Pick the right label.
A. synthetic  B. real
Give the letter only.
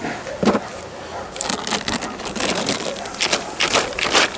B